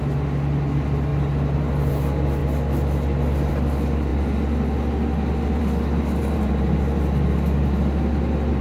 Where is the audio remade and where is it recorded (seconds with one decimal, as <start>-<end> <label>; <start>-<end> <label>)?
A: 0.0-6.2 recorded; 6.2-6.7 remade; 6.7-8.6 recorded